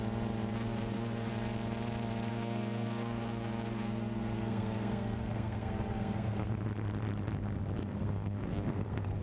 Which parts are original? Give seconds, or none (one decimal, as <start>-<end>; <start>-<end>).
0.0-0.5; 1.3-2.3; 6.5-7.8